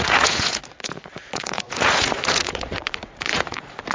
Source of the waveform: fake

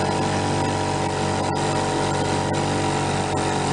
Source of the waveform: real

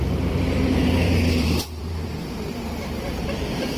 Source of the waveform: fake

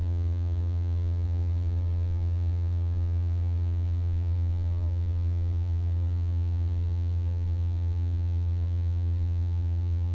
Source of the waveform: fake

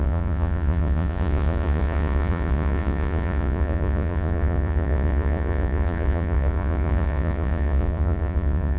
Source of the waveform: fake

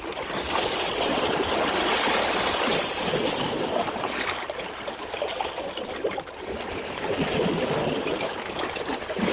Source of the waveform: real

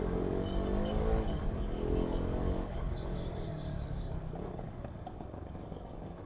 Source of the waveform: fake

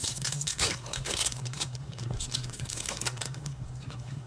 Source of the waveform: fake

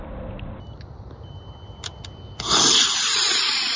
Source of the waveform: real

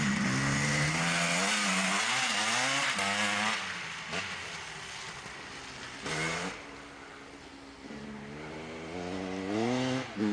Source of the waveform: real